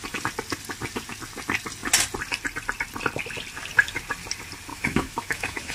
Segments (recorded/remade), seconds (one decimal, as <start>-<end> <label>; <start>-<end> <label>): 0.0-4.7 recorded; 4.7-5.7 remade